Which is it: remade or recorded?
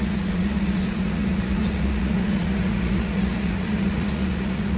remade